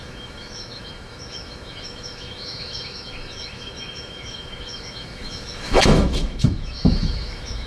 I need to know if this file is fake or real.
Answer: fake